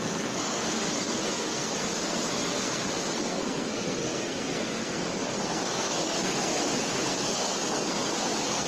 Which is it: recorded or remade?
remade